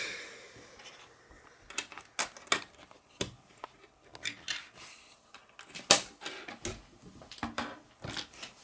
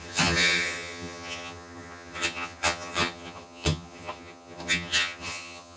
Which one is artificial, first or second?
second